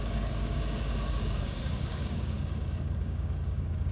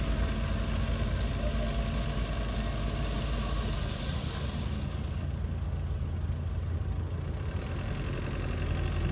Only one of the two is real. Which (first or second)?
second